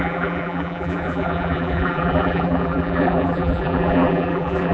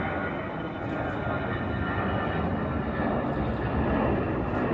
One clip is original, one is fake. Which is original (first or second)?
second